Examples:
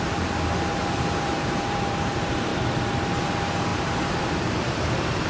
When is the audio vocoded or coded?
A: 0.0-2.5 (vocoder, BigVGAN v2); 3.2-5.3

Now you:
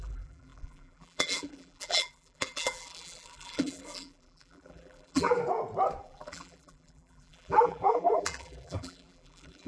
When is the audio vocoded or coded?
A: 0.0-5.4 (vocoder, BigVGAN v2); 6.0-9.7

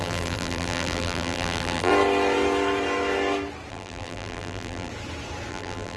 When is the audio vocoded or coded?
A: 0.0-1.9 (vocoder, BigVGAN v2); 3.7-4.9; 5.5-6.0

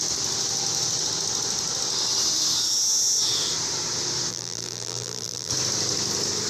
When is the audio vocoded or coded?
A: 4.3-5.5 (vocoder, BigVGAN v2)